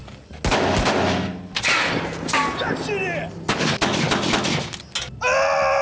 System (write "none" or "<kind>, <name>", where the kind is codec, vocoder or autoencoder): none